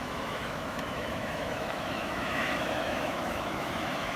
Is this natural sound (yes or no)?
no